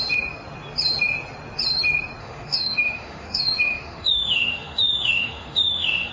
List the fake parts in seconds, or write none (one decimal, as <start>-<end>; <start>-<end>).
2.2-6.1